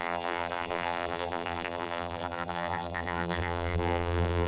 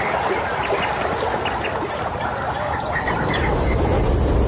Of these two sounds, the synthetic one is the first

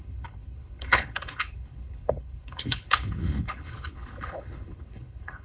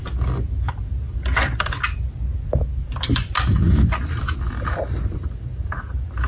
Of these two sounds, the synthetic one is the first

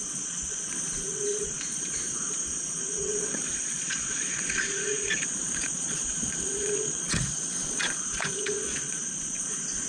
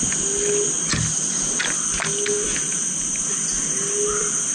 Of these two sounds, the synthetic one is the first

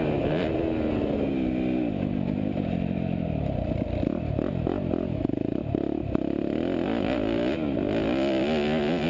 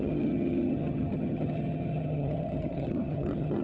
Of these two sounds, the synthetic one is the second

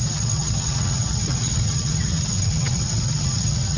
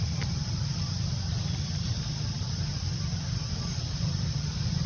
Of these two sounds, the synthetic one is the first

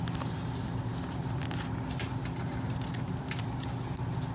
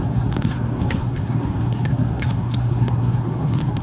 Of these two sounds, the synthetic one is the second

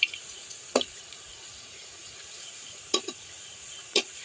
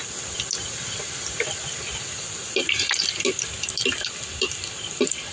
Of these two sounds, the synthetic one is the first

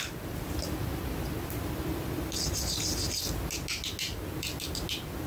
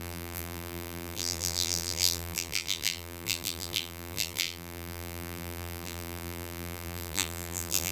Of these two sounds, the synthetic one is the second